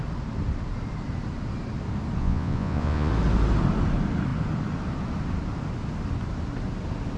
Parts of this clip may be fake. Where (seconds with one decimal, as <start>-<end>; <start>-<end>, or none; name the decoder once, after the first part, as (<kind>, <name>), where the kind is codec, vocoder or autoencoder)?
2.2-3.1 (vocoder, Vocos)